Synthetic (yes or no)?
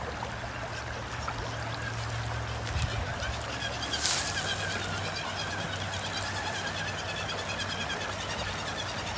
no